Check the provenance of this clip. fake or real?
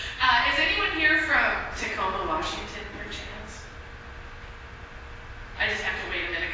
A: real